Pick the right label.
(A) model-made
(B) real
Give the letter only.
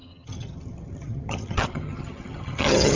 A